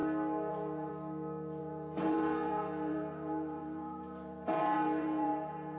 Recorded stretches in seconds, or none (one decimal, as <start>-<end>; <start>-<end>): 0.0-0.5; 0.9-1.6